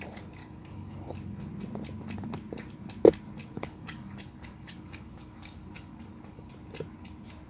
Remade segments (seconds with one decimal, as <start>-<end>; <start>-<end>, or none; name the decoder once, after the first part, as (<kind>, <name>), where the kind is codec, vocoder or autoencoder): 0.4-1.5 (codec, DAC); 3.4-6.5